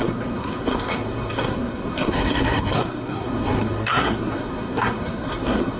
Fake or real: fake